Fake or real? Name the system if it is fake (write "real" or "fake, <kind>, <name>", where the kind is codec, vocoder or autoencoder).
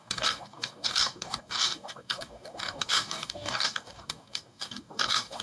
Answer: fake, codec, DAC